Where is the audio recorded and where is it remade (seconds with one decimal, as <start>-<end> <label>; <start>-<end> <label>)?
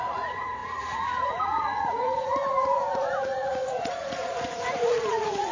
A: 0.0-5.5 remade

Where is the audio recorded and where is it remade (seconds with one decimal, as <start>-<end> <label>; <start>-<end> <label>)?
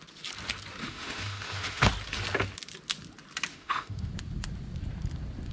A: 0.0-0.8 recorded; 0.8-1.9 remade; 1.9-3.5 recorded; 3.5-4.1 remade; 4.1-5.5 recorded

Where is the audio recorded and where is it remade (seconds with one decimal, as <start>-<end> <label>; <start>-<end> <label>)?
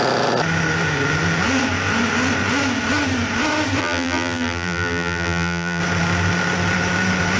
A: 0.0-3.8 recorded; 3.8-5.8 remade; 5.8-7.4 recorded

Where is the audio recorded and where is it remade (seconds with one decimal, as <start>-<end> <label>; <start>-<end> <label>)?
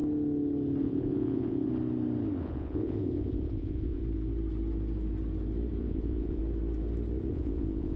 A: 0.0-0.8 recorded; 0.8-1.7 remade; 1.7-2.4 recorded; 2.4-4.0 remade; 4.0-5.8 recorded; 5.8-6.4 remade; 6.4-7.3 recorded; 7.3-8.0 remade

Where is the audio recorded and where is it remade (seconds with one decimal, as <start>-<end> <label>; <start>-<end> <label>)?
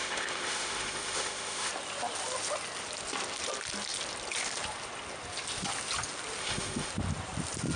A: 0.0-1.7 remade; 1.7-6.4 recorded; 6.4-6.9 remade; 6.9-7.8 recorded